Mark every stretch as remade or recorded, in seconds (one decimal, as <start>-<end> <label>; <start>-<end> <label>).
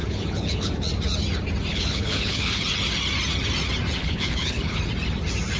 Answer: 0.0-0.7 remade; 0.7-1.7 recorded; 1.7-2.6 remade; 2.6-4.0 recorded; 4.0-4.8 remade; 4.8-5.6 recorded